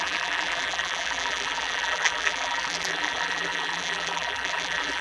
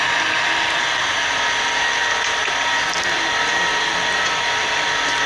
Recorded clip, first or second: second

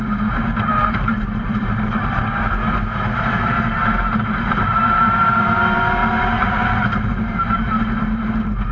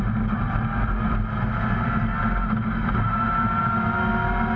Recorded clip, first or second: second